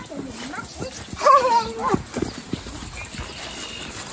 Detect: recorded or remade recorded